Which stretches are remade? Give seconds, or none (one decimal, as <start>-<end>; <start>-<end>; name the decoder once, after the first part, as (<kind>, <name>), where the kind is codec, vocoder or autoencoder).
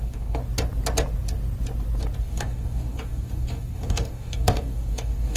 0.0-0.4 (codec, DAC); 2.2-5.4